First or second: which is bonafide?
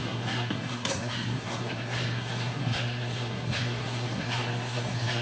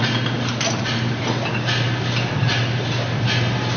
second